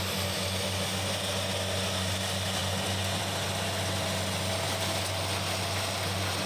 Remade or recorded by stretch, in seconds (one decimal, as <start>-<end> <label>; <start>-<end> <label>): 0.0-6.5 recorded